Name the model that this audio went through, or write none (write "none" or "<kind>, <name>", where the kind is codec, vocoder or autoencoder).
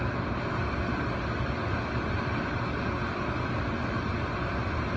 none